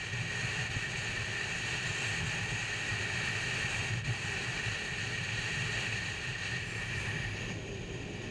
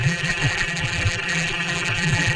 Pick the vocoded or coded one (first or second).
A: second